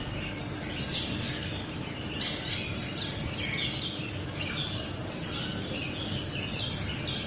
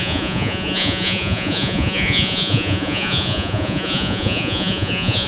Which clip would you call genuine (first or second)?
first